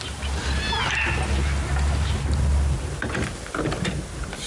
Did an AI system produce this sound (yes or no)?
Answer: no